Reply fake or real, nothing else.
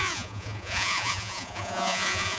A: fake